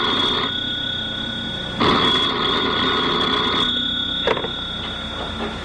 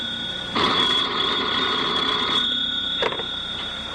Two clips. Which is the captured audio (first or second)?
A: first